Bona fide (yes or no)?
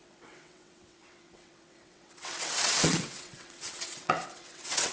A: no